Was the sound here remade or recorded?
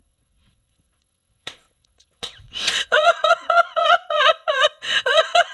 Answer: remade